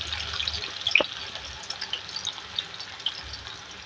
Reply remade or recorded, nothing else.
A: recorded